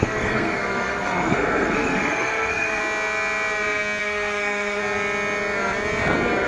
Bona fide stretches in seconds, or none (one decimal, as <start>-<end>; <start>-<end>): 2.8-4.0; 4.8-6.5